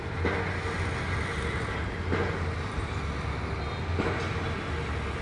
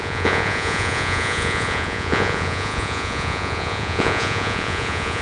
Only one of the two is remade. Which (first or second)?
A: second